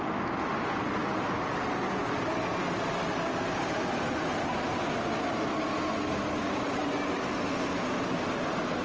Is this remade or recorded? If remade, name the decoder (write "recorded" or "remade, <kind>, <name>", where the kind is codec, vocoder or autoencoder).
recorded